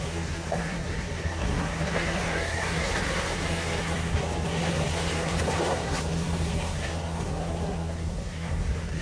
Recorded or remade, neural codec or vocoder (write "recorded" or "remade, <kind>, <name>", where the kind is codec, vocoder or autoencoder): remade, codec, SNAC